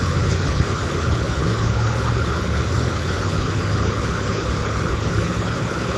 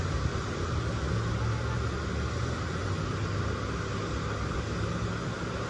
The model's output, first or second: first